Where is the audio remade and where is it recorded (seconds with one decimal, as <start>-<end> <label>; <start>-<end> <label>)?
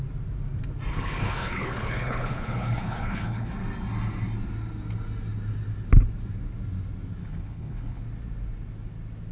0.0-0.9 recorded; 0.9-3.5 remade; 3.5-7.2 recorded; 7.2-8.0 remade; 8.0-9.3 recorded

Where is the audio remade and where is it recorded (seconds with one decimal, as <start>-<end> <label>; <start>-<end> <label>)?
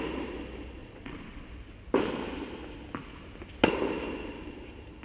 0.0-0.8 recorded; 0.8-1.5 remade; 1.5-5.0 recorded